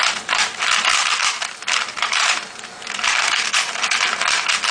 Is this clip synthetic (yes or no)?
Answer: yes